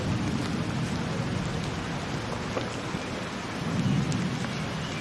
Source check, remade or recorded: recorded